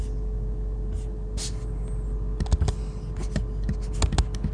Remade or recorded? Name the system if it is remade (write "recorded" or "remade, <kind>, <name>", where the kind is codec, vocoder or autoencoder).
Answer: recorded